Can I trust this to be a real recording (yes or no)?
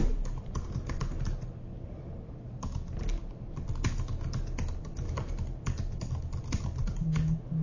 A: yes